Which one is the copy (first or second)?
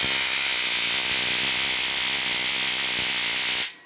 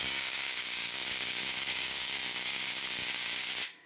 second